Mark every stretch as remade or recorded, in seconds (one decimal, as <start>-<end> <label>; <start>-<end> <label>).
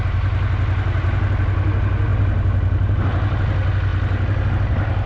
0.0-5.1 recorded